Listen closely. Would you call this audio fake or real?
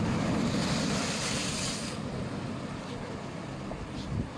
real